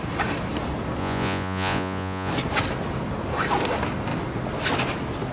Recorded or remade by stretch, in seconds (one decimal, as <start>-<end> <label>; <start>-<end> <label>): 0.0-1.0 recorded; 1.0-2.3 remade; 2.3-5.3 recorded